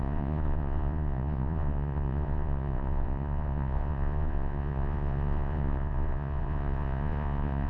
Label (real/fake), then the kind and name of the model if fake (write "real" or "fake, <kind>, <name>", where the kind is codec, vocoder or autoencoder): fake, vocoder, Vocos